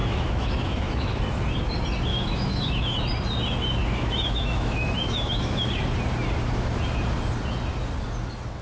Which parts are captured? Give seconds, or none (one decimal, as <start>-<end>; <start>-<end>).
1.2-2.1; 3.0-3.8; 5.7-8.6